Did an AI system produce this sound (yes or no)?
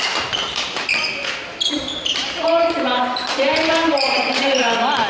yes